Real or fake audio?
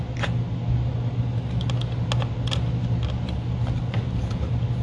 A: real